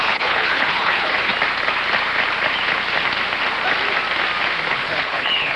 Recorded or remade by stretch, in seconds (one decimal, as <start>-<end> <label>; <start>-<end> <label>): 0.0-1.3 remade; 1.3-4.7 recorded; 4.7-5.6 remade